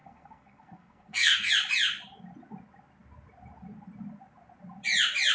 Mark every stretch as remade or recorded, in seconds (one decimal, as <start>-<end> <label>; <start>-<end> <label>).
0.0-1.5 remade; 1.5-5.3 recorded